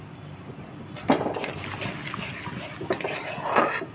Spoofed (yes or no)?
no